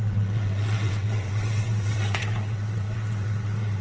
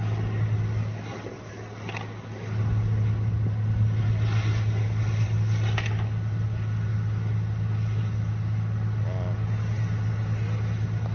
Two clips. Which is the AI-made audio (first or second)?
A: first